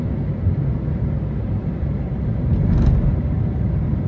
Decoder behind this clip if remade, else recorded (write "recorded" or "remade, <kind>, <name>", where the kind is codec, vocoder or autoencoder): remade, vocoder, BigVGAN v2